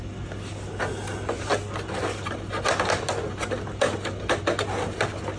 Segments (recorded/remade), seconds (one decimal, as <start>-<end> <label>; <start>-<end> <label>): 0.0-5.4 recorded